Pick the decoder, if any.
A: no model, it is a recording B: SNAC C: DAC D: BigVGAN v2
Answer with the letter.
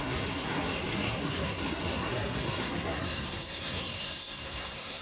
B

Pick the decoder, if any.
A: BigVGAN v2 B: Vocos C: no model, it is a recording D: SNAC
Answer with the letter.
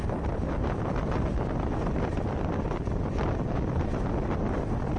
C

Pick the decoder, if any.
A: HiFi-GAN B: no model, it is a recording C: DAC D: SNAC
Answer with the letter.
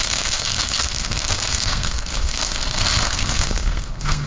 D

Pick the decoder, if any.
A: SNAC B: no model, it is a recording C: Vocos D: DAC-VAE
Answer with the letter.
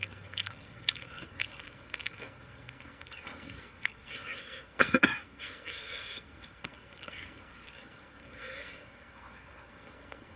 A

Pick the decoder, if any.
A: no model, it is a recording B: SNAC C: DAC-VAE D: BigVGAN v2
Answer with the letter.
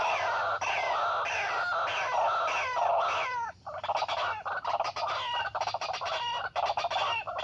A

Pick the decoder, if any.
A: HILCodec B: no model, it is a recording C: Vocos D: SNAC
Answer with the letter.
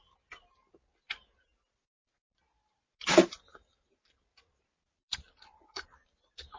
B